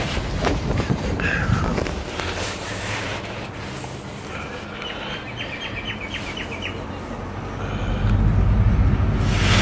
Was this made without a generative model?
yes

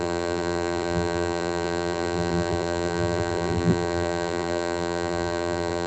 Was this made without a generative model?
no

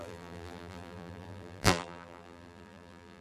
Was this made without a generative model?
no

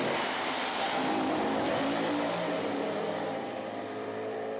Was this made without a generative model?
no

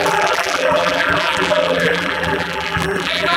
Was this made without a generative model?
no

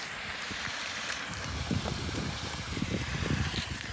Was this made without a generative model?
no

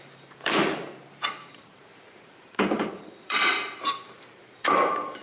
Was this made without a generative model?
no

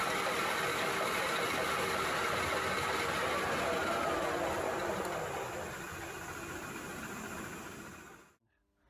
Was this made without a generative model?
yes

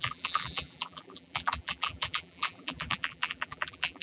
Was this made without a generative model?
no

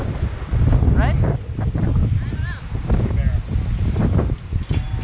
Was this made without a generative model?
yes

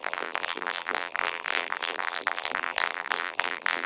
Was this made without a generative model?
no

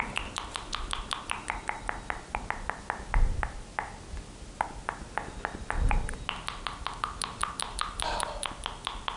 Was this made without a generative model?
yes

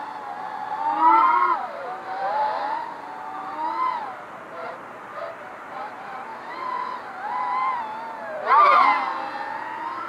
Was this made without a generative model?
yes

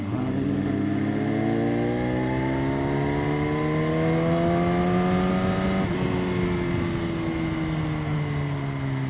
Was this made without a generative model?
yes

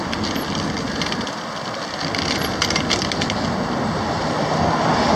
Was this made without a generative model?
yes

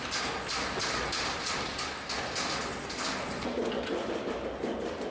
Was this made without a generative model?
yes